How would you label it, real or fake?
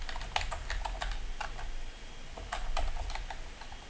real